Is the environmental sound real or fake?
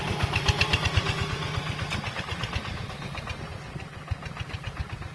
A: real